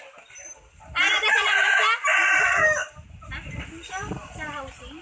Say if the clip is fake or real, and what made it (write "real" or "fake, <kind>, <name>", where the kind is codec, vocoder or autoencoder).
real